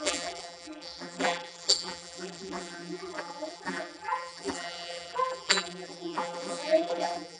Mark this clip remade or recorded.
remade